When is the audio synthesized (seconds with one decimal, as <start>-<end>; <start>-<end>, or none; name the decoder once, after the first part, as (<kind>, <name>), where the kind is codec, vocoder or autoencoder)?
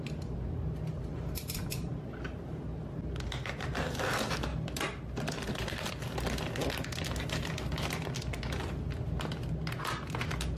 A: 4.5-5.9 (vocoder, BigVGAN v2)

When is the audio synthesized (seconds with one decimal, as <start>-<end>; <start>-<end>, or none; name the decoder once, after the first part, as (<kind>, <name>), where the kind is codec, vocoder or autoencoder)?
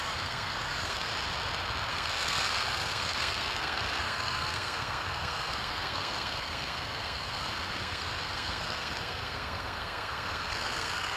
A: 0.0-1.1 (codec, SNAC); 1.9-11.2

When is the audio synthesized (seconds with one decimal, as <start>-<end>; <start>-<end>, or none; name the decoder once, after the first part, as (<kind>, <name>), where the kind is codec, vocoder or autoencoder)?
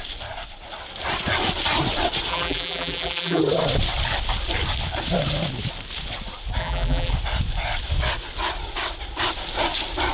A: 2.3-3.4 (vocoder, BigVGAN v2); 6.6-7.1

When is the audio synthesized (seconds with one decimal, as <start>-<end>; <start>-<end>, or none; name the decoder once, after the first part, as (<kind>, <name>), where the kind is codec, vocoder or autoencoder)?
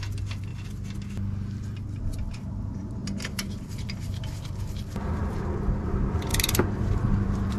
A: 0.0-0.5 (vocoder, BigVGAN v2); 2.0-7.6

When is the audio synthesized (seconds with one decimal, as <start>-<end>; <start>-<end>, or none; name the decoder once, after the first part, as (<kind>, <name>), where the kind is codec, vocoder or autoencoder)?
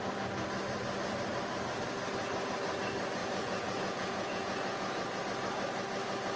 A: 3.2-5.2 (vocoder, Vocos)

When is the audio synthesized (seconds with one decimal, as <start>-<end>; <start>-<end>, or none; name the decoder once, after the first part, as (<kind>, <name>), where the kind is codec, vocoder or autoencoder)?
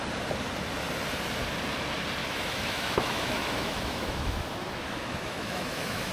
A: 2.2-6.1 (autoencoder, DAC-VAE)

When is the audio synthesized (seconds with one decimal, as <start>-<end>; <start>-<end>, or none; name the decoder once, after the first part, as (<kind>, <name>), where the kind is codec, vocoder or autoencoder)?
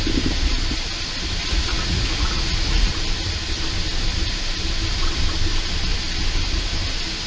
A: 1.4-2.9 (vocoder, Vocos)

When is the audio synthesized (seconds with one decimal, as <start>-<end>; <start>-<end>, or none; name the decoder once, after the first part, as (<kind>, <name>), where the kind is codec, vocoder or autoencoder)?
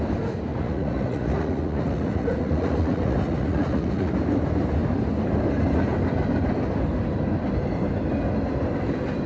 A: 0.5-4.1 (vocoder, Vocos)